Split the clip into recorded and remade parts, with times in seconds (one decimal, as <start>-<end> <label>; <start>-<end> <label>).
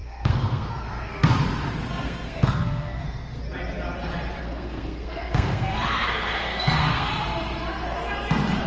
0.0-1.3 remade; 1.3-1.8 recorded; 1.8-3.4 remade; 3.4-4.4 recorded; 4.4-7.1 remade; 7.1-8.7 recorded